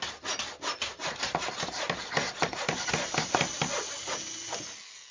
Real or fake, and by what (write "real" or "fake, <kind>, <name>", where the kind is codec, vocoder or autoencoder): real